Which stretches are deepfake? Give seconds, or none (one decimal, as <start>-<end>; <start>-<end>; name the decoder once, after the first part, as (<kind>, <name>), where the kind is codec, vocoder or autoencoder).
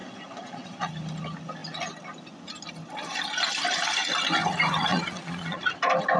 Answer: 0.0-0.9 (vocoder, Vocos); 4.9-5.8